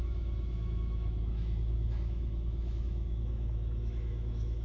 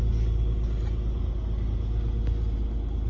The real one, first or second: second